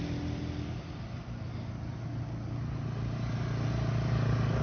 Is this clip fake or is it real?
real